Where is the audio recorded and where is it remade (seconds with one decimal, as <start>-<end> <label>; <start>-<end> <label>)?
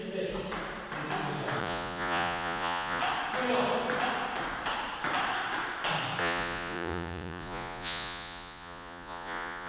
0.0-1.6 recorded; 1.6-3.0 remade; 3.0-6.2 recorded; 6.2-9.7 remade